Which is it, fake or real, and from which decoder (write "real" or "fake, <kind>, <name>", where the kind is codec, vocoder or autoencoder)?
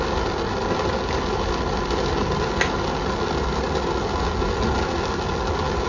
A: real